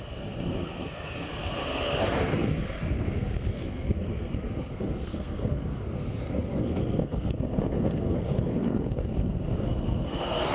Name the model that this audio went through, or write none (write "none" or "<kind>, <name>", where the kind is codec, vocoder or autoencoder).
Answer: codec, SNAC